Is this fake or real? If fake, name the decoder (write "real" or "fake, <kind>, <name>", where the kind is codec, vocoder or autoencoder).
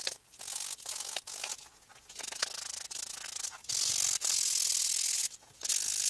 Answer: real